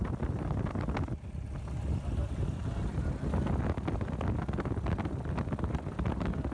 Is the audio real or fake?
real